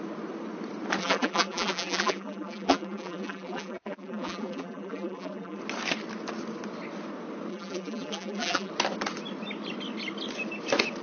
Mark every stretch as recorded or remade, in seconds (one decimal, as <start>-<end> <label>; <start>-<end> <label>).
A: 0.0-1.0 recorded; 1.0-5.6 remade; 5.6-7.5 recorded; 7.5-8.7 remade; 8.7-11.0 recorded